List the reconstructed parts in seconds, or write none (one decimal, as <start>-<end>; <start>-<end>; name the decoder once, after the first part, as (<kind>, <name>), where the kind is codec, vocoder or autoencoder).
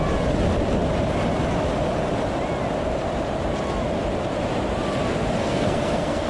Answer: 5.4-6.3 (codec, SNAC)